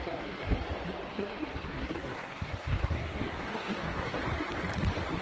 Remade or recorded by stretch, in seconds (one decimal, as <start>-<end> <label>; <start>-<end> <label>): 0.0-0.6 remade; 0.6-1.1 recorded; 1.1-4.2 remade; 4.2-5.2 recorded

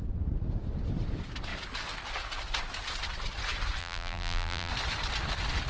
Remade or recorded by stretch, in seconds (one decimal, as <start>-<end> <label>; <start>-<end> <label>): 0.0-3.8 recorded; 3.8-4.7 remade; 4.7-5.7 recorded

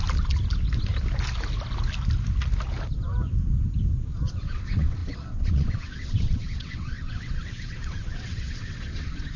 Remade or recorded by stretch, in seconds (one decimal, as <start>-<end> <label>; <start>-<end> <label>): 0.0-4.3 recorded; 4.3-9.4 remade

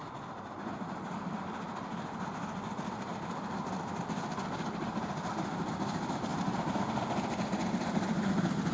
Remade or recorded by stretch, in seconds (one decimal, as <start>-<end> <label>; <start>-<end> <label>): 0.0-8.7 recorded

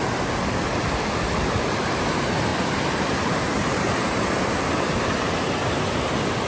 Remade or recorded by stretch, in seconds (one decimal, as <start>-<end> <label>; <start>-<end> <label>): 0.0-2.5 recorded; 2.5-5.9 remade; 5.9-6.5 recorded